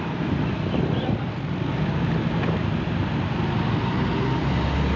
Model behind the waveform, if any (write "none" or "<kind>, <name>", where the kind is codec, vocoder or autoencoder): none